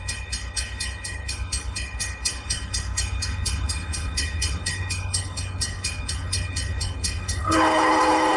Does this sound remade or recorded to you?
remade